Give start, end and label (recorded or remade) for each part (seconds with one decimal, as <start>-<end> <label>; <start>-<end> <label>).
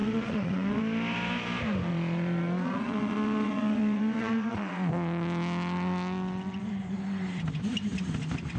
0.0-0.8 remade; 0.8-1.9 recorded; 1.9-4.9 remade; 4.9-8.6 recorded